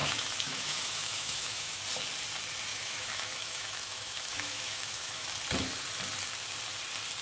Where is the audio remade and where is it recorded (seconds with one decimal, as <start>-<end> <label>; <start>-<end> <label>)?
0.0-1.8 remade; 1.8-2.7 recorded; 2.7-5.3 remade; 5.3-7.2 recorded